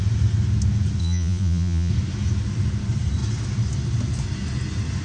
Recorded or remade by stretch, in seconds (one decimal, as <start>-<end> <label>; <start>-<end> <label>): 0.0-1.0 recorded; 1.0-1.9 remade; 1.9-5.0 recorded